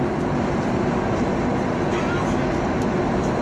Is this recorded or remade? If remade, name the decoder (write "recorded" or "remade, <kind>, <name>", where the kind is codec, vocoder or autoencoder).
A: recorded